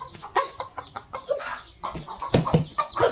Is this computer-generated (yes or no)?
yes